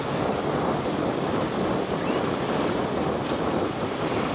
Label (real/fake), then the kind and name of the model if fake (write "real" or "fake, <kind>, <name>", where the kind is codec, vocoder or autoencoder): real